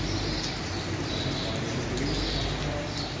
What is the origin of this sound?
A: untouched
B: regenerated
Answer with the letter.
A